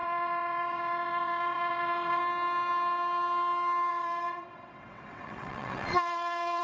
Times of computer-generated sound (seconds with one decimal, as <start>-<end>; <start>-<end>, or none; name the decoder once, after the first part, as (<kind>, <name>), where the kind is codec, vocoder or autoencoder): 0.0-2.2 (vocoder, WaveNeXt); 3.9-6.6